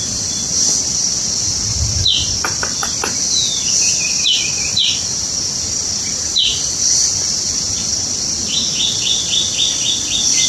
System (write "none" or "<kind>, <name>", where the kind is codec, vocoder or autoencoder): none